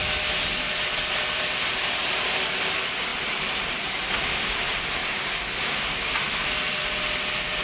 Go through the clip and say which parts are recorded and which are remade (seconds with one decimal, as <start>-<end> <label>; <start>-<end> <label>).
0.0-7.6 recorded